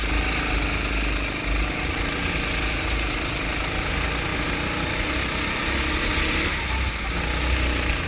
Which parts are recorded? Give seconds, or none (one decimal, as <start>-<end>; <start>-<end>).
0.0-8.1